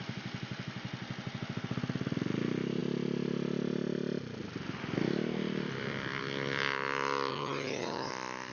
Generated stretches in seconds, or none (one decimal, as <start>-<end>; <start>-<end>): 7.3-8.1